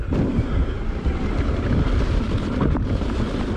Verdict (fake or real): real